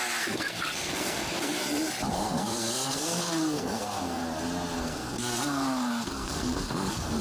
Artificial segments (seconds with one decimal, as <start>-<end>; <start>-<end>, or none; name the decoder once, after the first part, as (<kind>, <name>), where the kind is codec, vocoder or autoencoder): 0.0-1.6 (codec, SNAC); 2.1-4.2; 4.8-7.2